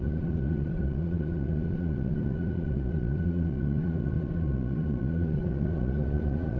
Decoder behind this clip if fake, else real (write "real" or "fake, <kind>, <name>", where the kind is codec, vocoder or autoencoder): fake, vocoder, Vocos